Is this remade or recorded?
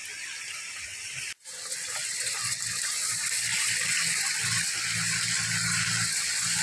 recorded